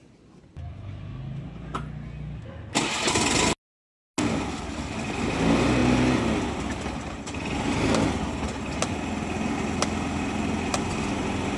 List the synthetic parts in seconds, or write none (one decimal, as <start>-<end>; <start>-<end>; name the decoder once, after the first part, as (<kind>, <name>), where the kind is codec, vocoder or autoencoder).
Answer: none